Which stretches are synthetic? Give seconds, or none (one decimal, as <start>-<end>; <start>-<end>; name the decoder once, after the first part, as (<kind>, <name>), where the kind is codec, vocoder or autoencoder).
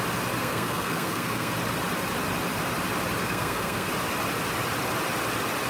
0.4-1.5 (codec, SNAC); 3.2-3.9